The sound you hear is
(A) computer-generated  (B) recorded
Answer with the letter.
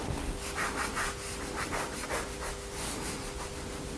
B